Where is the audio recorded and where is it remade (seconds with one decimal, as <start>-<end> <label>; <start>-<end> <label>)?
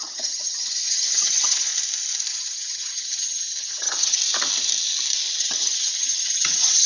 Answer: 0.0-1.7 remade; 1.7-2.3 recorded; 2.3-4.2 remade; 4.2-5.4 recorded; 5.4-6.9 remade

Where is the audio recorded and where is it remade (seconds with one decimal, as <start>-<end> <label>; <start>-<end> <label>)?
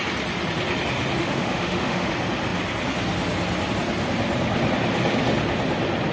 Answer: 0.0-1.2 recorded; 1.2-2.1 remade; 2.1-6.1 recorded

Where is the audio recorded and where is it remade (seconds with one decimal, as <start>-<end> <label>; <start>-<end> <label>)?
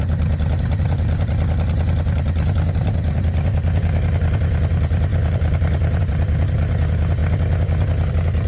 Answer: 0.0-7.2 remade; 7.2-8.1 recorded; 8.1-8.5 remade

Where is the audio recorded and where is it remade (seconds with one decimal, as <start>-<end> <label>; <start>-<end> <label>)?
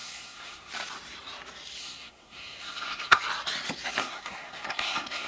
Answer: 0.0-0.7 remade; 0.7-1.8 recorded; 1.8-3.2 remade; 3.2-4.0 recorded; 4.0-5.3 remade